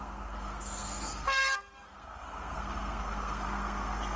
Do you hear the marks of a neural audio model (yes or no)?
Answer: yes